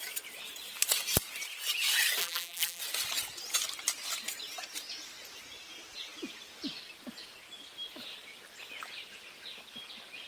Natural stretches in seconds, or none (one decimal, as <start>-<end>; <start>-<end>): 0.0-2.2; 2.8-10.3